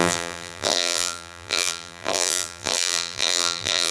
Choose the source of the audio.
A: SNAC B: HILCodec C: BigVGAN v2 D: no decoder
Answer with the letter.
C